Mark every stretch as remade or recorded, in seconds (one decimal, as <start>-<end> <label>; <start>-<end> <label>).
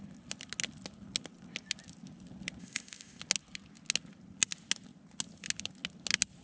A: 0.0-2.6 recorded; 2.6-3.2 remade; 3.2-6.4 recorded